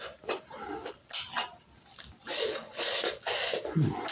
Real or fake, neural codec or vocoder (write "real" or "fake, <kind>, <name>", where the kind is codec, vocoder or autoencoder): real